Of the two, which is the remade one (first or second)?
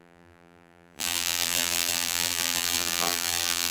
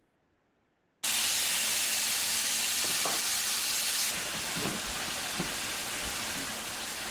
first